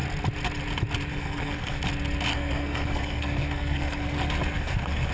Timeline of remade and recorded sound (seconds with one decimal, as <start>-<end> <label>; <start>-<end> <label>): 0.0-1.1 recorded; 1.1-1.8 remade; 1.8-2.3 recorded; 2.3-5.1 remade

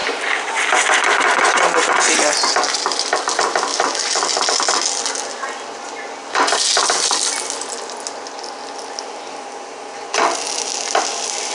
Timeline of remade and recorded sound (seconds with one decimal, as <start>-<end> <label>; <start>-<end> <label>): 0.0-11.5 recorded

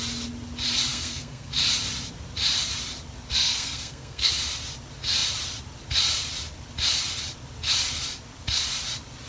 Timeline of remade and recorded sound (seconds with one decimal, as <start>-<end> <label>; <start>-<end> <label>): 0.0-0.9 recorded; 0.9-1.5 remade; 1.5-3.3 recorded; 3.3-4.3 remade; 4.3-9.3 recorded

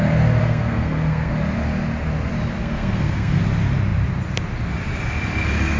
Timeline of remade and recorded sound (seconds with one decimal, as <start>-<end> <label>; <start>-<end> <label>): 0.0-0.4 recorded; 0.4-1.3 remade; 1.3-2.6 recorded; 2.6-3.4 remade; 3.4-5.8 recorded

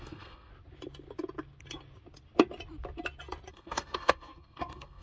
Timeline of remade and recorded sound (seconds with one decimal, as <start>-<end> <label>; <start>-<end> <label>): 0.0-0.5 remade; 0.5-3.5 recorded; 3.5-5.0 remade

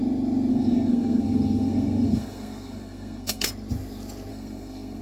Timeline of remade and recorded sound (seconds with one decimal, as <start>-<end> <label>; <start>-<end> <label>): 0.0-0.5 recorded; 0.5-3.5 remade; 3.5-4.3 recorded; 4.3-5.0 remade

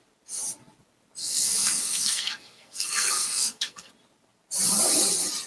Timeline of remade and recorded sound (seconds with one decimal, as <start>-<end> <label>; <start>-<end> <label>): 0.0-1.2 recorded; 1.2-3.9 remade; 3.9-5.5 recorded

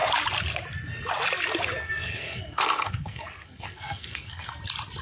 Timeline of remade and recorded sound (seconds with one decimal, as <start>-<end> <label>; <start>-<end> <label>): 0.0-1.8 recorded; 1.8-4.5 remade; 4.5-5.0 recorded